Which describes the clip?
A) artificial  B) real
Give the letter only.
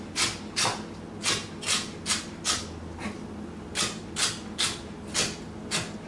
B